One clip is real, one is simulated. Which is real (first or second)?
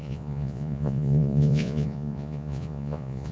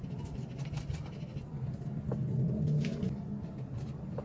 second